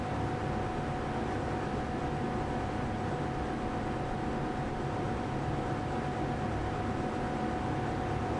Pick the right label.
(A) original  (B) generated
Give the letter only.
A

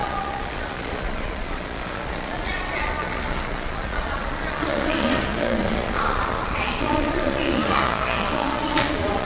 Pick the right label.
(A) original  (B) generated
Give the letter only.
B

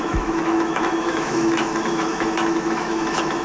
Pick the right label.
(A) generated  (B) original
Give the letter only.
A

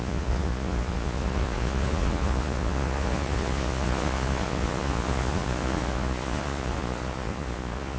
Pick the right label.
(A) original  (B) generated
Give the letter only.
B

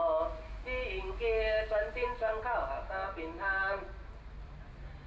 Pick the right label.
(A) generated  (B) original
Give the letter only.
B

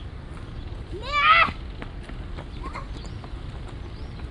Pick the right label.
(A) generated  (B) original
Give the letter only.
B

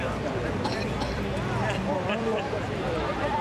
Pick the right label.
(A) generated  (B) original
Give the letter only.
A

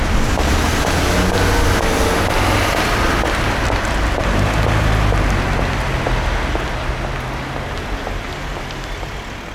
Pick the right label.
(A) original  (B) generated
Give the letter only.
A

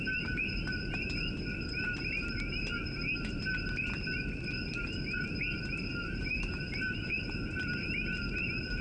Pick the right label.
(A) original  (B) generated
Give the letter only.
A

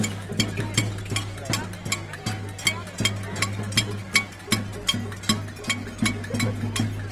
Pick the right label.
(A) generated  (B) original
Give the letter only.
B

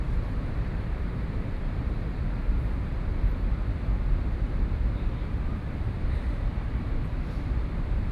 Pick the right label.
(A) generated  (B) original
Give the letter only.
A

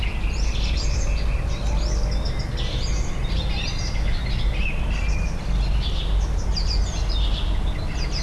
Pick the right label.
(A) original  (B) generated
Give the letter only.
A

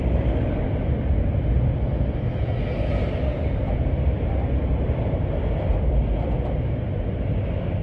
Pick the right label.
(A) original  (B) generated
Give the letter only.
A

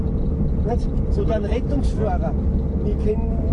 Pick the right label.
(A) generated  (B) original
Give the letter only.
B